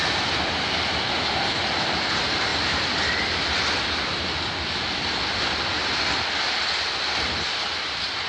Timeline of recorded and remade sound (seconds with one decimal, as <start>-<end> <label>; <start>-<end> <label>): 0.0-8.3 recorded